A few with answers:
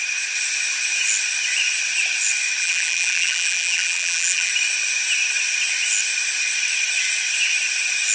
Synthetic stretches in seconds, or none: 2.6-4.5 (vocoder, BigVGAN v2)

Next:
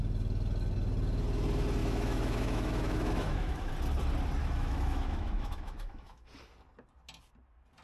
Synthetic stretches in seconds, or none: 1.8-3.7 (autoencoder, DAC-VAE); 4.4-6.3

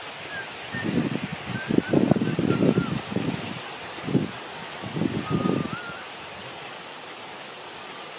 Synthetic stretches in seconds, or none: none

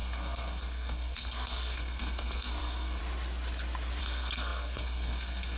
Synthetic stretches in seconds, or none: 0.0-3.0 (codec, SNAC); 4.0-5.6

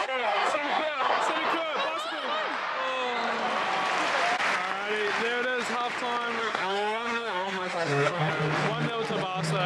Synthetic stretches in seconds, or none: 0.0-1.2 (codec, SNAC); 6.4-8.3

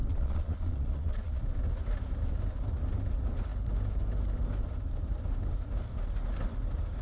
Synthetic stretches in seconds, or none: 0.0-1.4 (vocoder, Vocos)

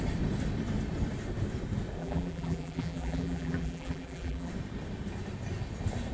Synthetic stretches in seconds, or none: 2.0-4.5 (vocoder, BigVGAN v2)